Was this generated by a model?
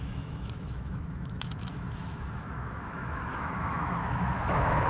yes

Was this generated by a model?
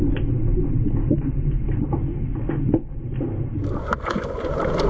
no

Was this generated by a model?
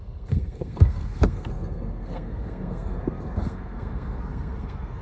yes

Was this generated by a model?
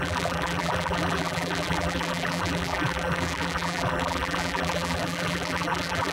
yes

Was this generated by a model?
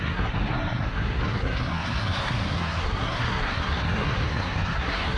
yes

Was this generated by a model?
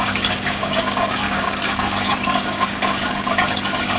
yes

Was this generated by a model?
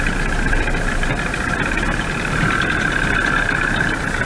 no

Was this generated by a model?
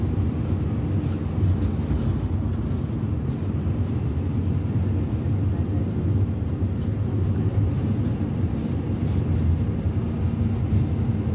no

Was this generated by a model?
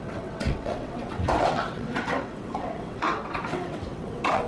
yes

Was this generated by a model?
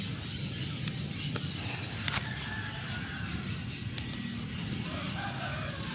no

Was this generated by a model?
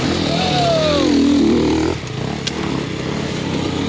no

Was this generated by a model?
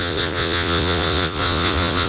yes